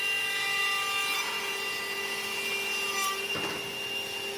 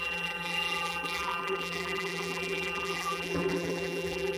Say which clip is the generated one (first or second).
second